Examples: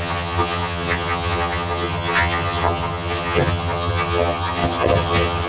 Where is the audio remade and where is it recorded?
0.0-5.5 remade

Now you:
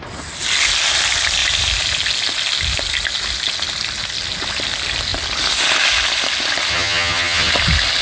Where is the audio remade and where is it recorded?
0.0-6.7 recorded; 6.7-7.5 remade; 7.5-8.0 recorded

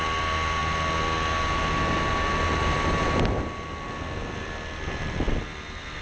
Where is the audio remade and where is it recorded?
0.0-6.0 recorded

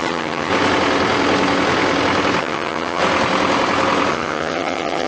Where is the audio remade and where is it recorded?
0.0-0.5 remade; 0.5-2.4 recorded; 2.4-3.0 remade; 3.0-4.1 recorded; 4.1-5.1 remade

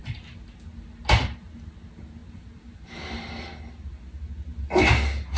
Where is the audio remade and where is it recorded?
0.0-5.4 recorded

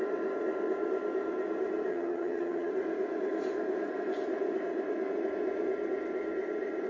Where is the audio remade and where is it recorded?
0.0-1.9 recorded; 1.9-2.7 remade; 2.7-6.9 recorded

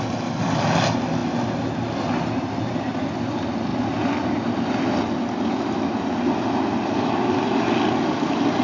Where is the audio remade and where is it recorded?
0.0-8.6 recorded